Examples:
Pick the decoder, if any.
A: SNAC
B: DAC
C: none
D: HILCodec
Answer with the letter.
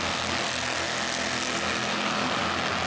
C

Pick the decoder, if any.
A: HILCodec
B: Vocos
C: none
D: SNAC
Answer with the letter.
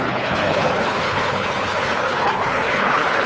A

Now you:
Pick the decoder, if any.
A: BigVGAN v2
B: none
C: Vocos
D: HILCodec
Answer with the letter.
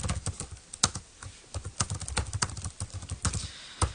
B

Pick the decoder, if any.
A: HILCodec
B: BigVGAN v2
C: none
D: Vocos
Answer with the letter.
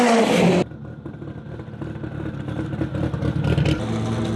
C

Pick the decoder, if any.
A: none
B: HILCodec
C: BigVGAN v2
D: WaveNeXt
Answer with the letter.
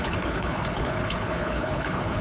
B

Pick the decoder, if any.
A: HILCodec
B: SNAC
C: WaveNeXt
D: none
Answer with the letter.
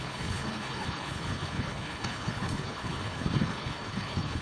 A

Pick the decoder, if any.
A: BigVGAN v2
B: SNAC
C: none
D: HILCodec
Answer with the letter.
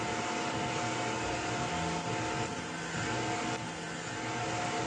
C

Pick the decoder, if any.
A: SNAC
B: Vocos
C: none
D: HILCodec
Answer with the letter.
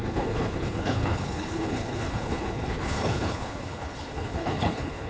D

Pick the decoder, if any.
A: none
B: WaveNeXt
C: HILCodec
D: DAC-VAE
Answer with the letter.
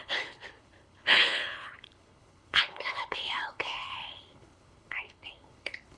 C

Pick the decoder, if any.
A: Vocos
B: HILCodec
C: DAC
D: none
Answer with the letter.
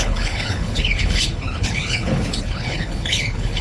B